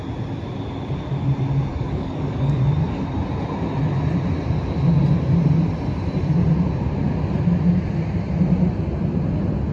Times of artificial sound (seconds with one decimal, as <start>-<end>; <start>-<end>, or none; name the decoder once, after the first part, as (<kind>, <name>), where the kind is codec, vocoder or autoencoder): 1.7-2.6 (codec, DAC)